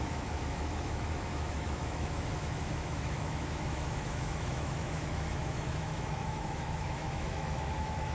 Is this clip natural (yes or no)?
no